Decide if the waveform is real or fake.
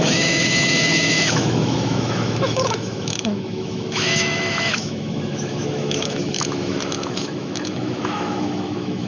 fake